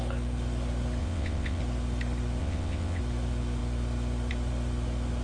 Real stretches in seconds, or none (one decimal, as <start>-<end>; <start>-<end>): 0.0-1.0; 1.6-2.4; 3.0-5.2